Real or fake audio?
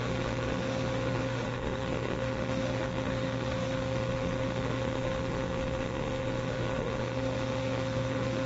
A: fake